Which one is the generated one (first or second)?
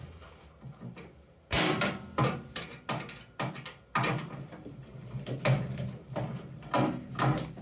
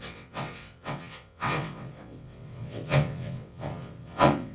second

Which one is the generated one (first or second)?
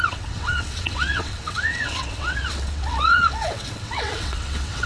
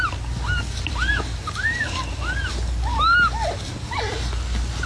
first